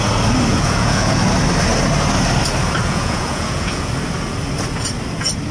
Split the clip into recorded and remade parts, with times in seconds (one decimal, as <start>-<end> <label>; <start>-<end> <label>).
0.0-0.5 recorded; 0.5-1.2 remade; 1.2-2.8 recorded; 2.8-3.9 remade; 3.9-5.5 recorded